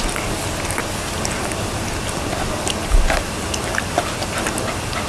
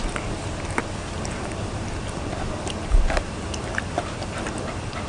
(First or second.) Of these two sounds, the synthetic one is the second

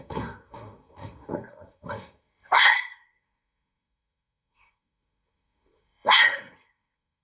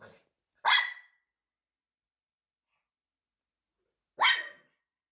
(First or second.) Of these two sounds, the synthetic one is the first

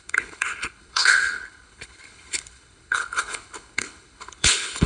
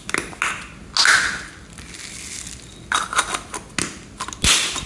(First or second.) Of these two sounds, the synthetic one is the first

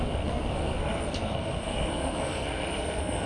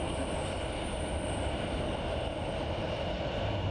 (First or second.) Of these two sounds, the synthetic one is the first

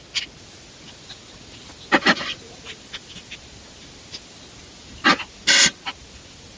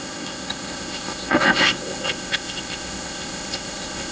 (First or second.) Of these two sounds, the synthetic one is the second